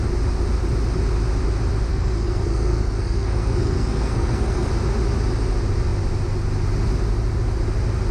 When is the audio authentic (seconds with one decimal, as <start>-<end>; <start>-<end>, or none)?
0.0-1.9; 4.7-8.1